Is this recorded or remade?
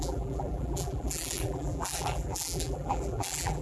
remade